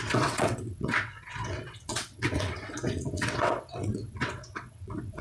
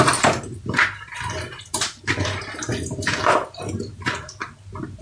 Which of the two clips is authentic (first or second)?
second